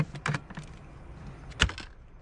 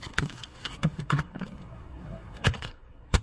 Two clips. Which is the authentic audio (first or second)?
first